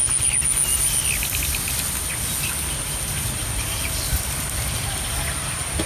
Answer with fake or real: real